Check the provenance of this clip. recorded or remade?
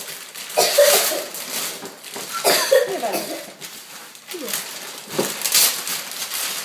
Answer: recorded